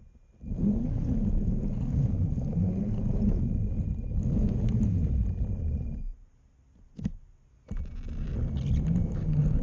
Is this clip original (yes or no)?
yes